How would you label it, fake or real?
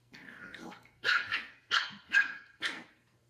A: fake